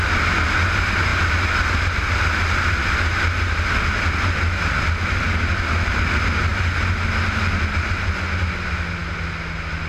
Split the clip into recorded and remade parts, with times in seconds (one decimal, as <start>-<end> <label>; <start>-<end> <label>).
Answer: 0.0-9.9 recorded